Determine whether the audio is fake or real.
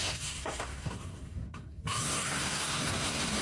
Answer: fake